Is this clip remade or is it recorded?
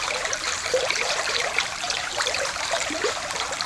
remade